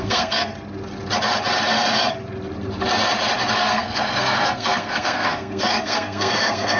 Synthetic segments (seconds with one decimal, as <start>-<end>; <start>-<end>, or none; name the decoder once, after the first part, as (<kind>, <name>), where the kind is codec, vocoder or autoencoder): 0.0-0.5 (codec, SNAC); 3.5-6.8